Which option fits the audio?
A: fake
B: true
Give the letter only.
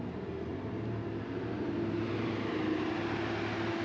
B